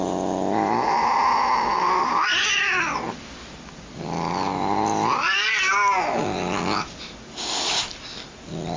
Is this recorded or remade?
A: recorded